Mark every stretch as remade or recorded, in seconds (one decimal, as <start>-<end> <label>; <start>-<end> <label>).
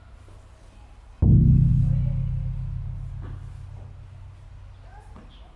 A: 0.0-5.6 recorded